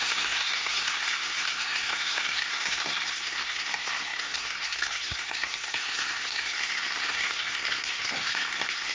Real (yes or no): no